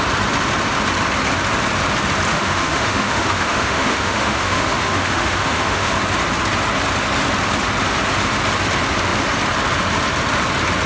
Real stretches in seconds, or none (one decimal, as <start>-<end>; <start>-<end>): 0.0-2.3; 5.9-10.9